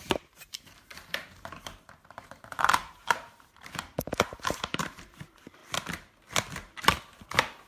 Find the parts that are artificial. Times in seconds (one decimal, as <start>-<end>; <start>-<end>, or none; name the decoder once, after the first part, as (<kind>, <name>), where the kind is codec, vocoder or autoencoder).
0.0-5.6 (vocoder, BigVGAN v2); 7.2-7.7